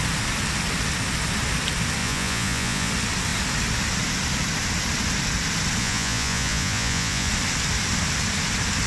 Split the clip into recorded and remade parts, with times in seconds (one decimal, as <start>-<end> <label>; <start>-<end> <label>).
0.0-2.0 recorded; 2.0-2.9 remade; 2.9-5.8 recorded; 5.8-7.3 remade; 7.3-8.9 recorded